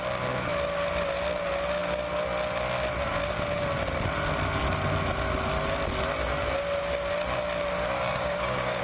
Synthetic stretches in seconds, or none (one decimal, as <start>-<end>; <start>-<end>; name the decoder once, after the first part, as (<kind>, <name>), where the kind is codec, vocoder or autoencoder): 7.7-8.8 (codec, DAC)